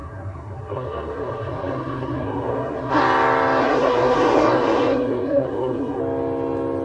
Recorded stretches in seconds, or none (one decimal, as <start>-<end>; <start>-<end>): 3.0-3.6; 6.0-6.8